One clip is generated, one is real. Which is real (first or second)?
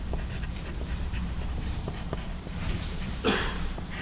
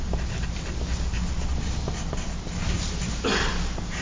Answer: second